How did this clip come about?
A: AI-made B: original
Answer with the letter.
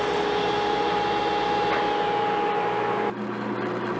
B